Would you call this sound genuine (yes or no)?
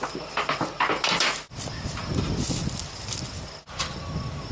yes